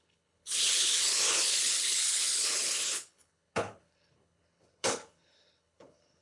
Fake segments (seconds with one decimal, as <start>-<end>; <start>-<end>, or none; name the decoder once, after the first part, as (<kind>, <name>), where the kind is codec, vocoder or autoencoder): 0.0-6.2 (codec, HILCodec)